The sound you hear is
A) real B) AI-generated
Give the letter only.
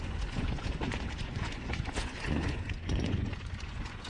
B